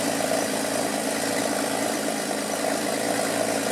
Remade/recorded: remade